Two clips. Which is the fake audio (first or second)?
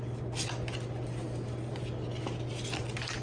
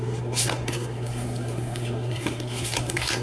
second